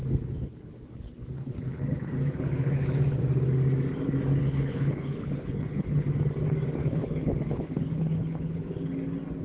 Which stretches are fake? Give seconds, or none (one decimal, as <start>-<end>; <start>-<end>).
0.0-3.2; 4.4-6.1; 6.8-8.9